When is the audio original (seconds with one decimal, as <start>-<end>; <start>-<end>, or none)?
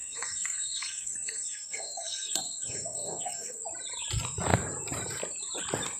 3.6-6.0